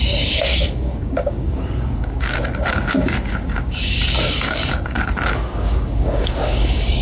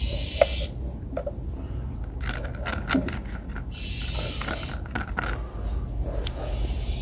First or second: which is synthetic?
first